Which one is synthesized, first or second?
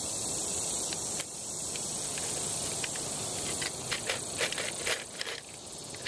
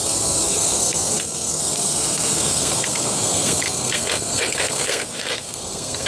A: second